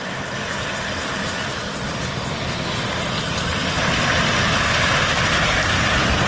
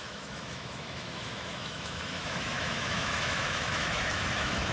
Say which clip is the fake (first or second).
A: second